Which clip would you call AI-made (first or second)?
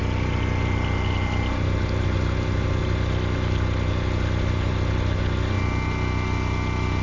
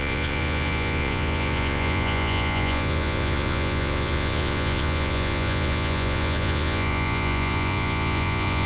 second